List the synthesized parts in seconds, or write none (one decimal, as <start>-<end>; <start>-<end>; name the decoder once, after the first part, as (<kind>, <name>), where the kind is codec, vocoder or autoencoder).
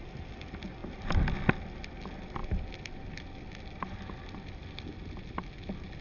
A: none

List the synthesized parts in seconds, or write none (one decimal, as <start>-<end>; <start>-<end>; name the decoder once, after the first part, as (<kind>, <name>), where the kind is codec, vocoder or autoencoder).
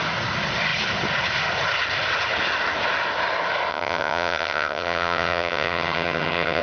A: 3.7-6.6 (vocoder, HiFi-GAN)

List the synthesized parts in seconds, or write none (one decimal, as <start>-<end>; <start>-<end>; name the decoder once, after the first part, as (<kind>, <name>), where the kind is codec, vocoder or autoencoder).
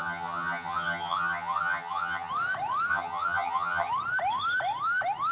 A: 0.0-2.3 (vocoder, HiFi-GAN); 2.9-3.9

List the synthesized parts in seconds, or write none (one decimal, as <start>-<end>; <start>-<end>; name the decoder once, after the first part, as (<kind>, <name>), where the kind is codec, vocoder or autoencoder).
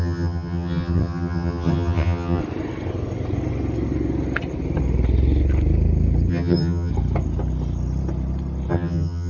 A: 0.0-2.4 (vocoder, HiFi-GAN); 6.3-6.9; 8.7-9.3